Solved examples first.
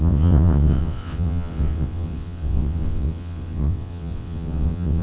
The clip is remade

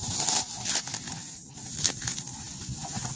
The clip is recorded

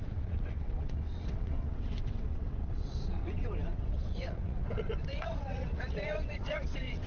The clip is remade